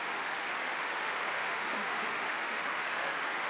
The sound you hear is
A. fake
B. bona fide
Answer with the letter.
A